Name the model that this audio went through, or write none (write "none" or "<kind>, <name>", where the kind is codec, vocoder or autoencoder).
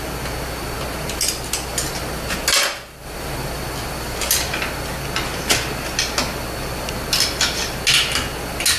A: none